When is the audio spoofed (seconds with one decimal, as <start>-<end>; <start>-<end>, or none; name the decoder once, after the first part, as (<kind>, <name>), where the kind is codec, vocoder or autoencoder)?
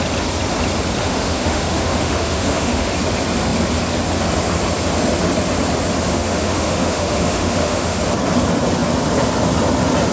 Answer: 1.0-2.9 (autoencoder, DAC-VAE); 6.1-8.0